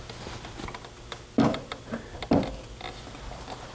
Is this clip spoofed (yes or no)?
no